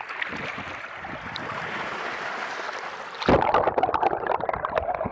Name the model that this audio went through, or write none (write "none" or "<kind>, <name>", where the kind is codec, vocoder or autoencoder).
none